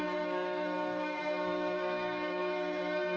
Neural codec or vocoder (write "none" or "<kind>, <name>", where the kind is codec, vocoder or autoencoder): codec, SNAC